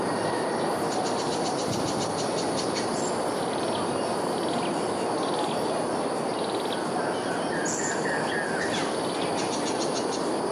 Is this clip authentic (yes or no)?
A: no